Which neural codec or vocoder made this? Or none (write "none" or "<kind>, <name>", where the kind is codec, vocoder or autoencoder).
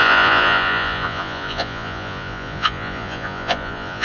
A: vocoder, Vocos